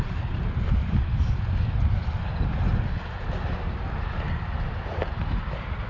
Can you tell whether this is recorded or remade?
recorded